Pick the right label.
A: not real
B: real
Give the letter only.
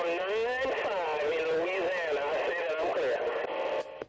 B